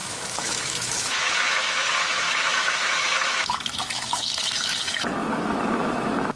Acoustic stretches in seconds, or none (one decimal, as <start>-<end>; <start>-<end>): none